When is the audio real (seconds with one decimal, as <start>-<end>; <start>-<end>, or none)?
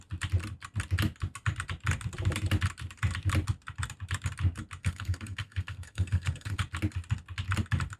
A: 0.0-4.8; 6.6-8.0